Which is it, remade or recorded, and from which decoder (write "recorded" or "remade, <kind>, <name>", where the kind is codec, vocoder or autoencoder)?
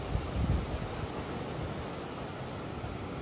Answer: recorded